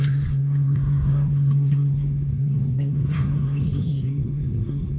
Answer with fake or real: fake